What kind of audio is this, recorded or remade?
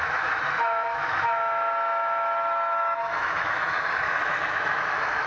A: remade